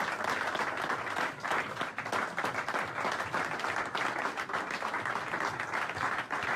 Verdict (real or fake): real